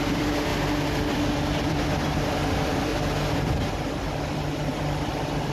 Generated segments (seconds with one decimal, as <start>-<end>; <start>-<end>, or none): 0.0-0.5; 1.1-2.9; 4.0-5.5